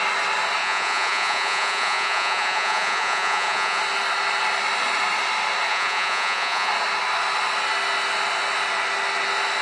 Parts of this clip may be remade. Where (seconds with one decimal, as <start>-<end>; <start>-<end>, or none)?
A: 0.6-3.8; 5.7-6.7